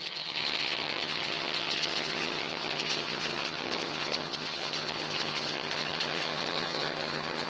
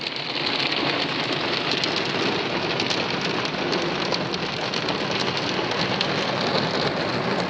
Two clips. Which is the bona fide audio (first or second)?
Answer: second